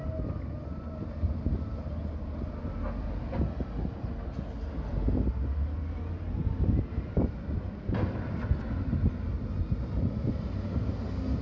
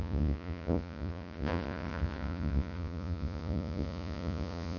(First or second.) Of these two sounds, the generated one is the second